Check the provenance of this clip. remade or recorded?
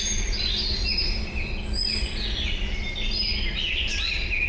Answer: recorded